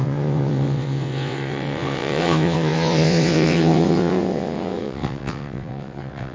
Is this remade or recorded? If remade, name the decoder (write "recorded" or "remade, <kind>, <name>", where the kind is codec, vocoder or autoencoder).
remade, vocoder, WaveNeXt